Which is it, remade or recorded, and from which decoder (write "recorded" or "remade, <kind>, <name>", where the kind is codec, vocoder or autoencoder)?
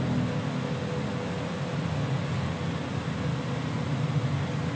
recorded